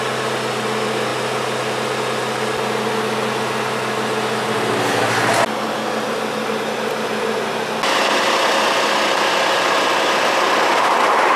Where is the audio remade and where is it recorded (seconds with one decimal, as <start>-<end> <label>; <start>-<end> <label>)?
0.0-11.4 recorded